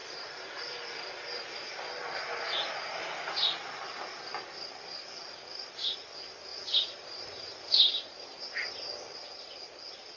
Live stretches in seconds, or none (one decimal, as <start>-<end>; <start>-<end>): 0.6-6.5; 8.4-10.2